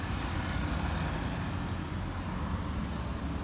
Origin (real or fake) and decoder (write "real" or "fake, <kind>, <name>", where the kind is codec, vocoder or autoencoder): real